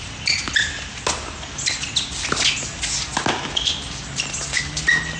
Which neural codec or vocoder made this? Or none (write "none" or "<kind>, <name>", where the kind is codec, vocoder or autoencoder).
none